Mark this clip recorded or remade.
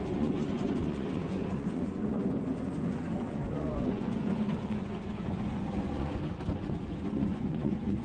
remade